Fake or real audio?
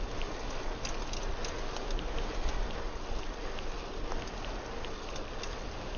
real